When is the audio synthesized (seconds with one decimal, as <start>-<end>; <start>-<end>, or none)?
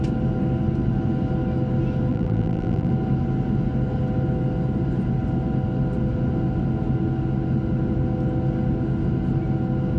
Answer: 2.1-2.9